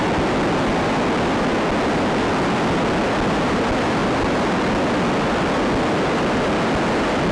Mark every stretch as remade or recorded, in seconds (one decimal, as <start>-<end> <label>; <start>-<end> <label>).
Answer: 0.0-7.3 recorded